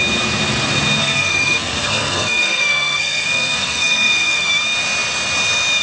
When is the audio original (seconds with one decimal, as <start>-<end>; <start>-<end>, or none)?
0.0-1.0; 4.5-5.8

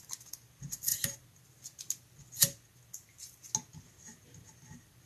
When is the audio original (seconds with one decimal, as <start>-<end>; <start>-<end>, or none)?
0.0-5.1

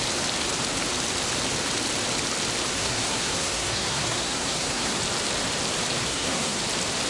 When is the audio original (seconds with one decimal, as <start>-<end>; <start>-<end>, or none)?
0.0-2.7; 5.0-6.0; 6.6-7.1

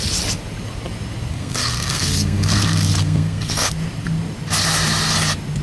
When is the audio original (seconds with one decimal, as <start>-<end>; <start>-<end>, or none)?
0.0-1.3; 3.7-5.6

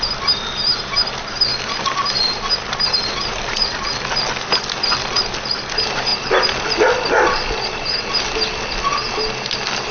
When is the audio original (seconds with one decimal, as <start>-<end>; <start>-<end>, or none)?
0.0-9.9

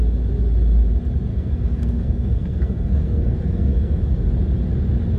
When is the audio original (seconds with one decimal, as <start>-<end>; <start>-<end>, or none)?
0.0-1.3; 4.0-5.2